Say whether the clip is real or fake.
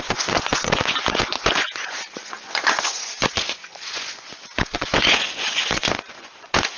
fake